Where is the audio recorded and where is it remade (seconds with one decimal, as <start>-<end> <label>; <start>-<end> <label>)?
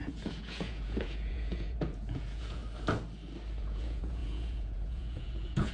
0.0-2.6 remade; 2.6-3.6 recorded; 3.6-5.7 remade